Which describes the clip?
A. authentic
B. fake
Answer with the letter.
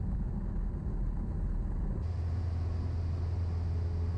A